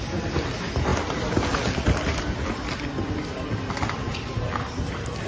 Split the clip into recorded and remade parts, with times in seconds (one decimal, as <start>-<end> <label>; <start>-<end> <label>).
0.0-5.3 recorded